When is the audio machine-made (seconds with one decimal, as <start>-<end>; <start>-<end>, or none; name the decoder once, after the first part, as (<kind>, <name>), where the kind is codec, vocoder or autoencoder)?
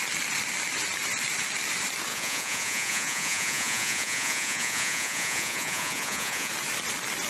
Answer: 2.1-6.5 (vocoder, Vocos)